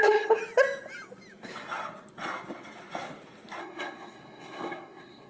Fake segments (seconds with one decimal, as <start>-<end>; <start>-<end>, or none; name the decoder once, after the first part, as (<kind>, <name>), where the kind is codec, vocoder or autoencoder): 0.0-0.4 (codec, SNAC); 3.6-5.3